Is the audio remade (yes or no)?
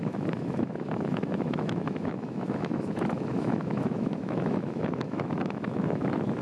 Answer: yes